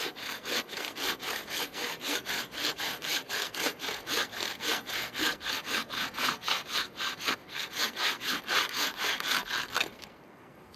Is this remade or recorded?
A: remade